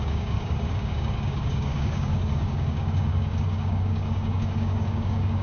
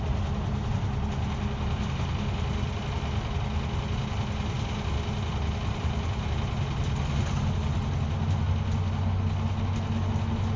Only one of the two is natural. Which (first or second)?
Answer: second